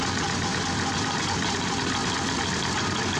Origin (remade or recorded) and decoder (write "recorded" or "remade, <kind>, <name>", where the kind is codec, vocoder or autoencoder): recorded